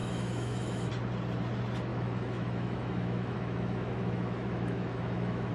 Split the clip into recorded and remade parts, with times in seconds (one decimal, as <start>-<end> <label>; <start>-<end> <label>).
0.0-0.9 remade; 0.9-1.9 recorded; 1.9-5.5 remade